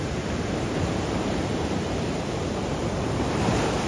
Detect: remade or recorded remade